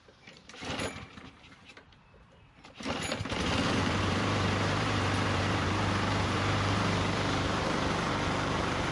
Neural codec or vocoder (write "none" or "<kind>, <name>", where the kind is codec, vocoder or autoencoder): vocoder, BigVGAN v2